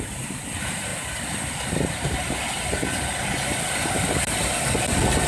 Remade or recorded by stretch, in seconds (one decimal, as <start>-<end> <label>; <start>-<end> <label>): 0.0-5.3 recorded